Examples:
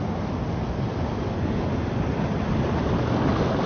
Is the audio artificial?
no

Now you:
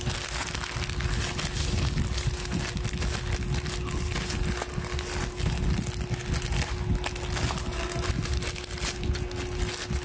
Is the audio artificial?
no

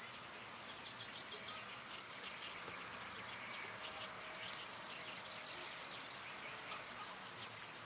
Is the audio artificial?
no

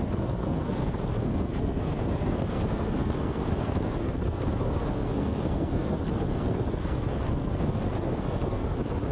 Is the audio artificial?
yes